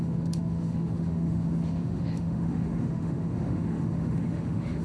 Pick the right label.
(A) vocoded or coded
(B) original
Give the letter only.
A